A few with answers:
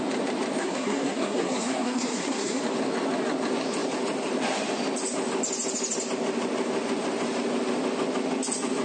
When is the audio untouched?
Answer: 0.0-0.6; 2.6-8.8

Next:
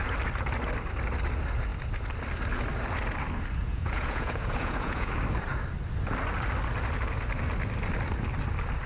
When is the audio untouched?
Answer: 0.0-3.6; 5.1-8.9

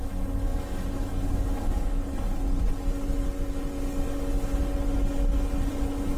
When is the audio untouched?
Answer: 2.1-5.8